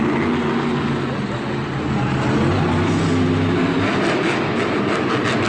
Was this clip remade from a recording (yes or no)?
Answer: no